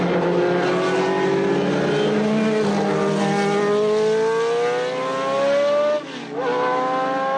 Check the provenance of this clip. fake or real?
real